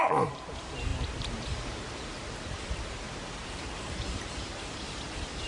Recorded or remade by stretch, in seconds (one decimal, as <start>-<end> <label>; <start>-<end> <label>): 0.0-4.8 remade; 4.8-5.5 recorded